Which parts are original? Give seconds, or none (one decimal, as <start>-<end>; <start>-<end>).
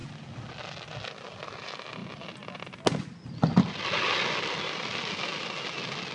0.0-6.1